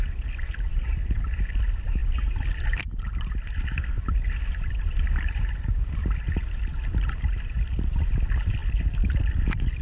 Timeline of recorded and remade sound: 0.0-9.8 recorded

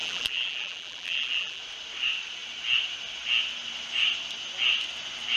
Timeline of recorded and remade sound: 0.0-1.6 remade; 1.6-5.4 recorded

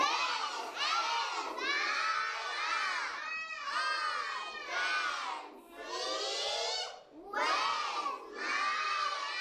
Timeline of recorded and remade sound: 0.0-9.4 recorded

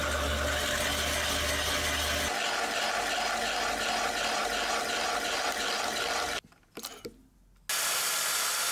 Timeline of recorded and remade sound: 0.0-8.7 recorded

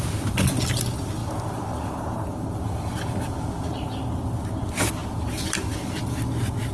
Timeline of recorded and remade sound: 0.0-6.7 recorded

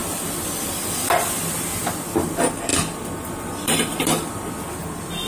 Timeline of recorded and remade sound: 0.0-1.2 remade; 1.2-2.7 recorded; 2.7-4.5 remade; 4.5-5.3 recorded

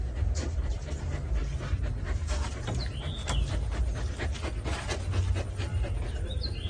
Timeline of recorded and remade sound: 0.0-1.4 remade; 1.4-2.0 recorded; 2.0-3.2 remade; 3.2-5.5 recorded; 5.5-6.7 remade

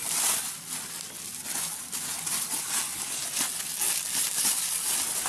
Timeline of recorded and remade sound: 0.0-5.3 recorded